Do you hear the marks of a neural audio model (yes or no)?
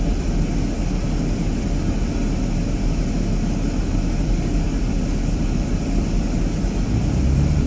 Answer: no